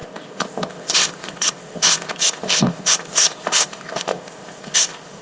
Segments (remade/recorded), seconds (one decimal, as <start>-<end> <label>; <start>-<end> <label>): 0.0-5.2 remade